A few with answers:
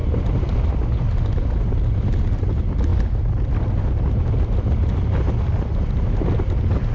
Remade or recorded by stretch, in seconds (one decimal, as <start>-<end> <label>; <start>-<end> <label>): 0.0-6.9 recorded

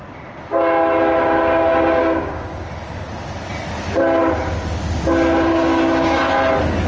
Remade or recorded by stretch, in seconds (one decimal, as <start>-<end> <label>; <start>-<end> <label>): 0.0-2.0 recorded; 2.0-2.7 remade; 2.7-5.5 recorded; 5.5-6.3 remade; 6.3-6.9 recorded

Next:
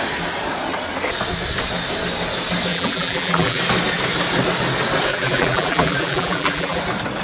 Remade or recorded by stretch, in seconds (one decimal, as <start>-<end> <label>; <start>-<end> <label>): 0.0-2.7 recorded; 2.7-3.6 remade; 3.6-5.1 recorded; 5.1-6.8 remade; 6.8-7.2 recorded

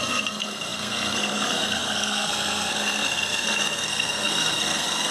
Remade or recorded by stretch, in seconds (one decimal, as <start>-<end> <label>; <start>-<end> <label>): 0.0-5.1 remade

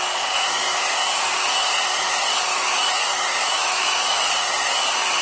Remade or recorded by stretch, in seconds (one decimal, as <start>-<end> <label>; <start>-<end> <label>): 0.0-2.5 recorded; 2.5-4.5 remade; 4.5-5.2 recorded

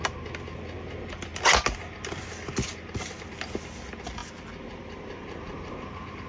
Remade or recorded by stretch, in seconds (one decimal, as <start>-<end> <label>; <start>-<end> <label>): 0.0-6.3 recorded

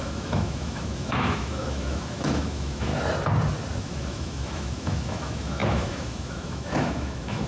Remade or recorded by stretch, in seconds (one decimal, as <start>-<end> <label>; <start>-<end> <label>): 0.0-2.9 remade; 2.9-3.8 recorded; 3.8-7.5 remade

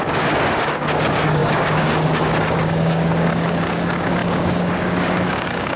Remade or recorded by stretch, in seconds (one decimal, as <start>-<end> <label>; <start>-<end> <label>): 0.0-5.8 remade